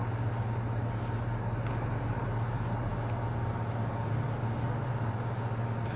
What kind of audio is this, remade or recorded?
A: recorded